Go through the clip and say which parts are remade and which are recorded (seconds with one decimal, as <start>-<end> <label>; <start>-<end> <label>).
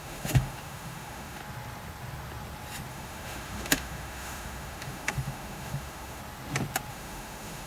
0.0-1.4 remade; 1.4-2.9 recorded; 2.9-6.2 remade; 6.2-6.9 recorded; 6.9-7.7 remade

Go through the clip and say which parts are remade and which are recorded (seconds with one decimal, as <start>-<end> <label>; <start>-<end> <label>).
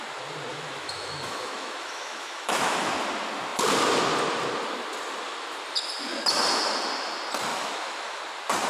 0.0-0.5 recorded; 0.5-2.9 remade; 2.9-7.5 recorded; 7.5-8.2 remade; 8.2-8.7 recorded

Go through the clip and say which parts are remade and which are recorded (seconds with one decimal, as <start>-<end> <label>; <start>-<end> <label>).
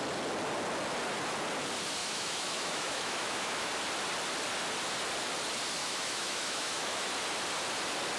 0.0-2.0 recorded; 2.0-3.7 remade; 3.7-5.8 recorded; 5.8-7.1 remade; 7.1-8.2 recorded